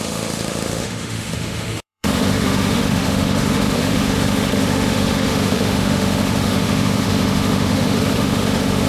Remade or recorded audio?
remade